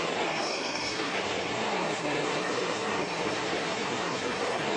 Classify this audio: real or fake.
fake